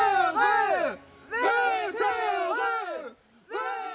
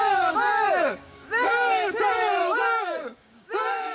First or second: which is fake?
second